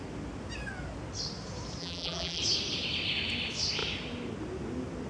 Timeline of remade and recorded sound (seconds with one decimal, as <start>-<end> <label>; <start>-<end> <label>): 0.0-1.8 recorded; 1.8-2.4 remade; 2.4-5.1 recorded